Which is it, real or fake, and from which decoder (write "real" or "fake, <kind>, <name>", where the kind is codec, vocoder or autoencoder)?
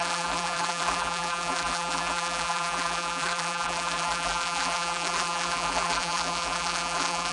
fake, vocoder, BigVGAN v2